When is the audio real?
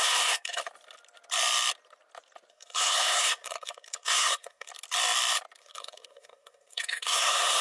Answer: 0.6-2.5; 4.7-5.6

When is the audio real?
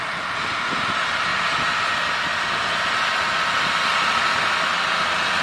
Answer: 0.0-5.4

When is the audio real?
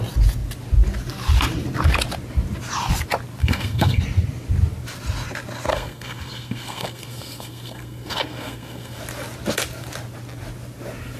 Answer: 0.0-3.4; 4.0-5.7; 9.0-11.2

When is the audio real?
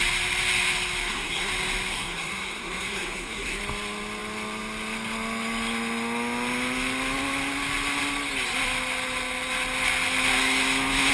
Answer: 0.0-1.0; 1.5-1.9; 3.6-11.1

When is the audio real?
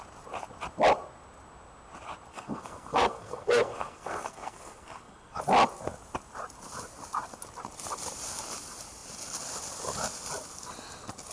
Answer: 0.0-2.3; 5.4-11.3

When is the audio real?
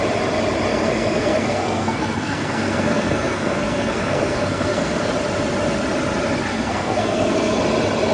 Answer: 0.0-0.7; 5.1-6.5; 7.6-8.1